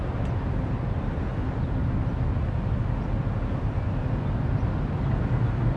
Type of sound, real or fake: real